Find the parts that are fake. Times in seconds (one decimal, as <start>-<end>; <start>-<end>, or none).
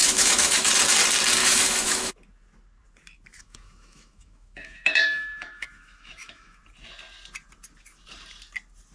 0.0-0.7; 1.4-2.1; 3.3-6.6